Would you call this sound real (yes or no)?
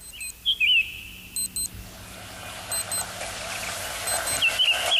yes